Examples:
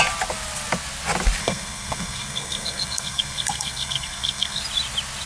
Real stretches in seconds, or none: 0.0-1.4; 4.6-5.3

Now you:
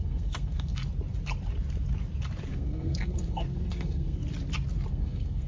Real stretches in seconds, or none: 0.8-2.5; 4.2-4.9

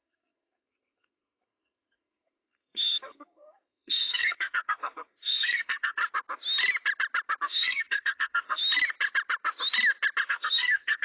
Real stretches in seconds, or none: 6.0-7.4; 8.6-10.3

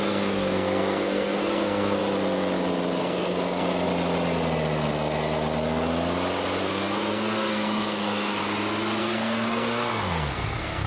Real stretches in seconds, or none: 2.0-3.0; 3.9-6.6; 8.4-9.0

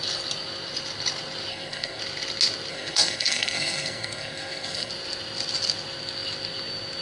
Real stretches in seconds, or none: 0.0-1.5; 2.0-2.7; 4.9-7.0